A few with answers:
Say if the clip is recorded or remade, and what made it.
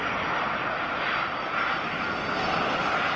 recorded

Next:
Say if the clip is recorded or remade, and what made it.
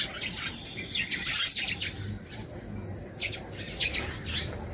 recorded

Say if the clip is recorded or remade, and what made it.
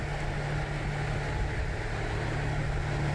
recorded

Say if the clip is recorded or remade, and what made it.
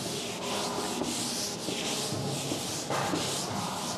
recorded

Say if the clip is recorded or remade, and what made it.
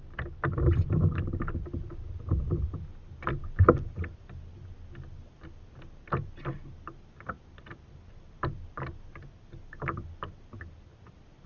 recorded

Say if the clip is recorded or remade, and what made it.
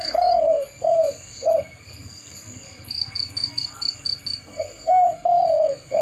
remade, codec, SNAC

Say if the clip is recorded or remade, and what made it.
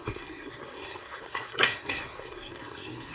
remade, codec, SNAC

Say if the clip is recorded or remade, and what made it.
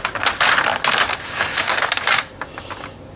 recorded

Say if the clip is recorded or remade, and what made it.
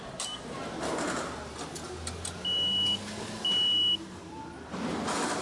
recorded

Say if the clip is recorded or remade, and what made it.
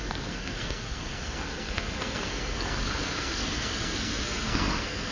remade, codec, SNAC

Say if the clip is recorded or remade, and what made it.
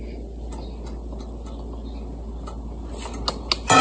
recorded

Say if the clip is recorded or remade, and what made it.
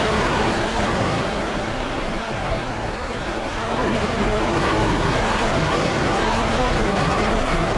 remade, codec, SNAC